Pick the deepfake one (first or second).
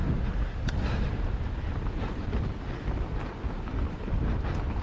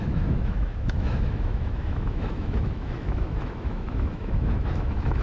second